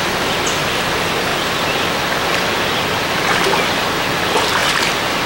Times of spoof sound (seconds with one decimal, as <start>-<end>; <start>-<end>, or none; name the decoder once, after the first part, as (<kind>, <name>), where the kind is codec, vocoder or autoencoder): none